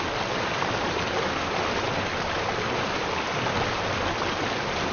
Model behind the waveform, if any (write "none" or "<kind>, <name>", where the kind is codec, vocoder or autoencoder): none